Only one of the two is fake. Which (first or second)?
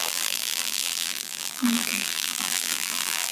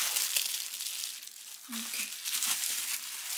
first